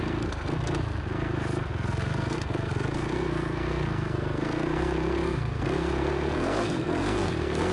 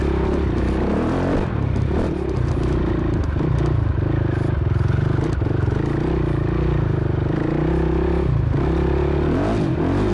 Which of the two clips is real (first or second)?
second